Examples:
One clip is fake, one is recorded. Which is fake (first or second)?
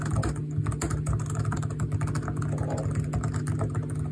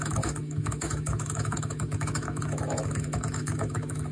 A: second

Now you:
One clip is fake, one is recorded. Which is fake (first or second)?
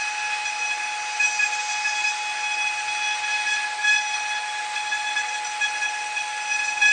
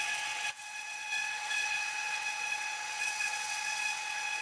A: second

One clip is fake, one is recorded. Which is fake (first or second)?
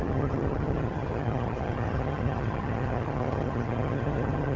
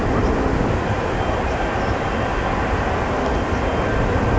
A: first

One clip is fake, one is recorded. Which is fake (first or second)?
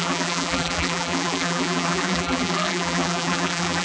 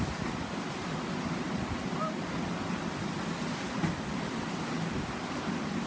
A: first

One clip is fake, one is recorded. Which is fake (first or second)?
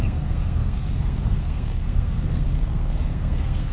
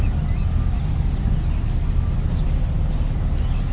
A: first